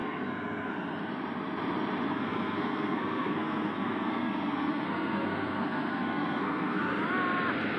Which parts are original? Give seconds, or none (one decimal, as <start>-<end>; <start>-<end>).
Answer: 0.7-2.1; 6.8-7.8